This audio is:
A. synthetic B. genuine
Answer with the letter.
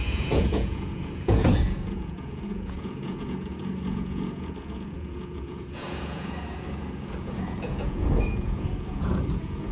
A